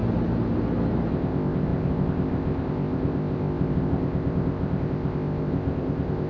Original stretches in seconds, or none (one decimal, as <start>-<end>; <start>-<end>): 0.0-1.1

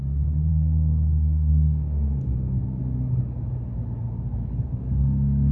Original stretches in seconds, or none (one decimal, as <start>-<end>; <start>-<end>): 0.0-0.5; 2.8-4.8